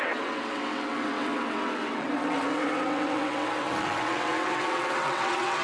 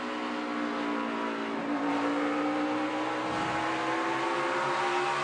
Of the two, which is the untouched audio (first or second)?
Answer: second